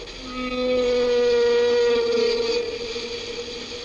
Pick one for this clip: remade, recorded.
recorded